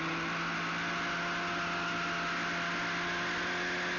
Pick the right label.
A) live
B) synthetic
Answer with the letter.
A